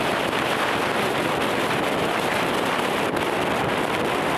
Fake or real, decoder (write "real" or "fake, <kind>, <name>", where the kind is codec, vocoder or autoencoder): real